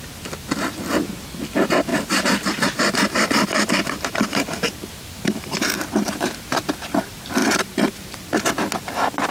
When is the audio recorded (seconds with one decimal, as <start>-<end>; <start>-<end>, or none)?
0.0-1.9; 6.7-7.4; 8.4-9.3